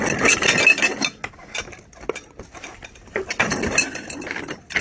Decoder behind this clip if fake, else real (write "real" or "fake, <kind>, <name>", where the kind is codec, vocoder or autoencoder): real